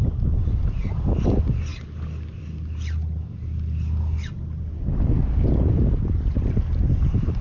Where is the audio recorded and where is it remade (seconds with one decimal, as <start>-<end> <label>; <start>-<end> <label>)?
0.0-7.4 recorded